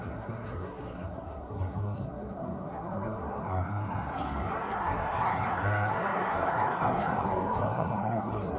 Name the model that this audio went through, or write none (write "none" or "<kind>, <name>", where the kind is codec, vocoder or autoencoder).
codec, SNAC